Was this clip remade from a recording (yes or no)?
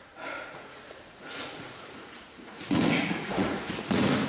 yes